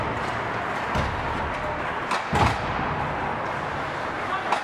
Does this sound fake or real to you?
real